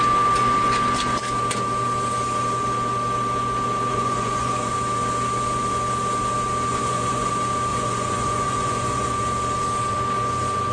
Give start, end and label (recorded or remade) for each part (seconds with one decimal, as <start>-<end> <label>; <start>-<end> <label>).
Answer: 0.0-3.9 recorded; 3.9-4.7 remade; 4.7-6.7 recorded; 6.7-7.3 remade; 7.3-7.7 recorded; 7.7-9.1 remade; 9.1-10.7 recorded